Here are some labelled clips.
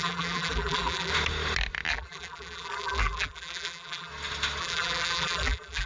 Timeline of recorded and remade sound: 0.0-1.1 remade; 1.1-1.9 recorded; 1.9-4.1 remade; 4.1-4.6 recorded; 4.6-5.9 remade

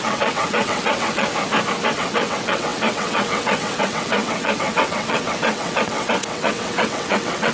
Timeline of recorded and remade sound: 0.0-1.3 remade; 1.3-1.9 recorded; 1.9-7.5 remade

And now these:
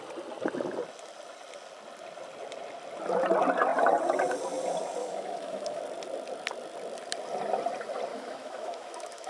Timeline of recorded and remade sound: 0.0-5.0 recorded; 5.0-5.8 remade; 5.8-8.1 recorded; 8.1-9.3 remade

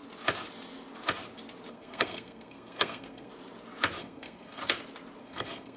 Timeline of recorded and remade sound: 0.0-1.7 recorded; 1.7-3.3 remade; 3.3-4.0 recorded; 4.0-4.6 remade; 4.6-5.2 recorded; 5.2-5.8 remade